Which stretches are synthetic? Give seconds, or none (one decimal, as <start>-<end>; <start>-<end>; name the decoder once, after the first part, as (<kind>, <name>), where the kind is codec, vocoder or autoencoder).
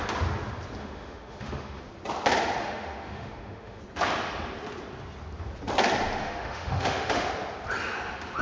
0.8-1.8 (autoencoder, DAC-VAE); 2.6-3.8; 6.2-7.3